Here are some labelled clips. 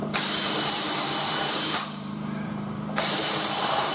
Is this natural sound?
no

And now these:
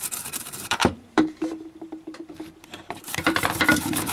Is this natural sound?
no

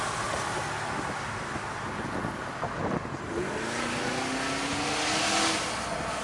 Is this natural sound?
yes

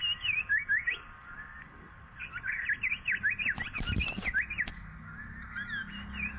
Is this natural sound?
yes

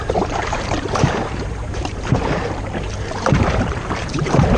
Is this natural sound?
no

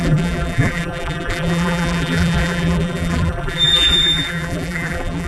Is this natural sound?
no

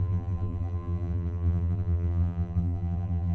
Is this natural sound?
no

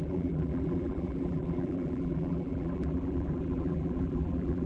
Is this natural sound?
no